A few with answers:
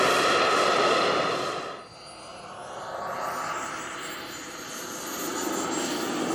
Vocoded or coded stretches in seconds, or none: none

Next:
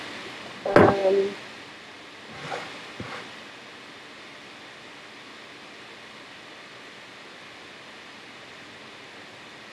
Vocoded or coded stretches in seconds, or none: none